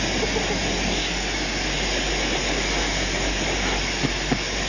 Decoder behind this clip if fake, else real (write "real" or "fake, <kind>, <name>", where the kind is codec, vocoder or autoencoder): real